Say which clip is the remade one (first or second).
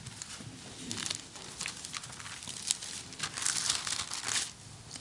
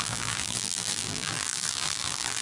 second